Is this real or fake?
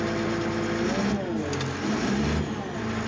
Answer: real